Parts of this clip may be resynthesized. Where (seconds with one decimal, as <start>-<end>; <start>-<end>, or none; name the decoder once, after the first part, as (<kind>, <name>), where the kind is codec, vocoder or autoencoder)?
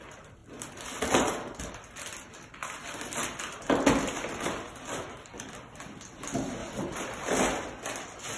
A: none